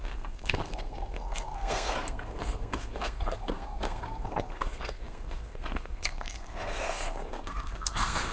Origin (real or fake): fake